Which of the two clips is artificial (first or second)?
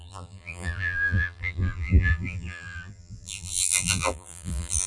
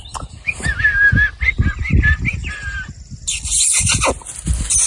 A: first